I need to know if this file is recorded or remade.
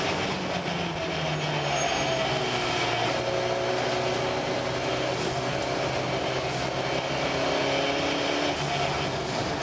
recorded